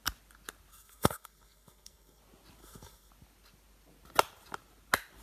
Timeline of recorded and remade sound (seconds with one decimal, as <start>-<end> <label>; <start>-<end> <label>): 0.0-0.7 recorded; 0.7-2.2 remade; 2.2-2.6 recorded; 2.6-3.1 remade; 3.1-5.2 recorded